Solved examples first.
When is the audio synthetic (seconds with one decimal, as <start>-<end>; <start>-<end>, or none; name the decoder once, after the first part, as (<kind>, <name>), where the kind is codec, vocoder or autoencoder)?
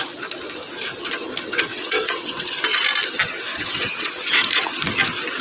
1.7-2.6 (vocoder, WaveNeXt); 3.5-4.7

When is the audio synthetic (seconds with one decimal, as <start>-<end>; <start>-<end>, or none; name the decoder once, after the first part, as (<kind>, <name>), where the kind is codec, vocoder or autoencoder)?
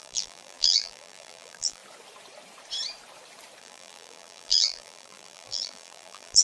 0.0-1.8 (vocoder, BigVGAN v2); 3.6-6.4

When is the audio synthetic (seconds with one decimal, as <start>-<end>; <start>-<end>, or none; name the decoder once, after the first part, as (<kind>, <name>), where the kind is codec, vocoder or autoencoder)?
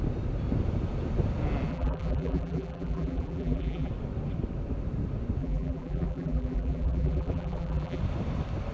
1.7-3.9 (vocoder, BigVGAN v2); 5.4-8.0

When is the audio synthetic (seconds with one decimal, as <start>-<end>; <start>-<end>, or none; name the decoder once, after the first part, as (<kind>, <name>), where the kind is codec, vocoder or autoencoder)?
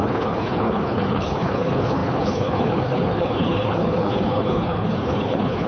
0.0-5.7 (codec, HILCodec)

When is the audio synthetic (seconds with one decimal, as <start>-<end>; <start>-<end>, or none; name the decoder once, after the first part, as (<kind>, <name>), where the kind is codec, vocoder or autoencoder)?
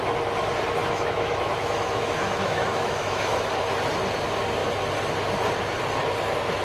0.8-3.5 (autoencoder, DAC-VAE)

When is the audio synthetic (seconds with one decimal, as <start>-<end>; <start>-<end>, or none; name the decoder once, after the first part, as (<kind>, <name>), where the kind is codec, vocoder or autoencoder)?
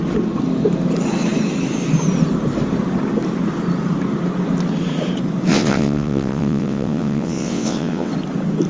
5.5-8.1 (vocoder, WaveNeXt)